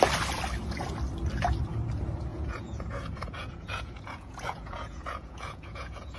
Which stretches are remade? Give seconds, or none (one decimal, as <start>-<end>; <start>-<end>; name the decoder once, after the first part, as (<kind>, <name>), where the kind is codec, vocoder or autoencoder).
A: 2.3-6.2 (vocoder, Vocos)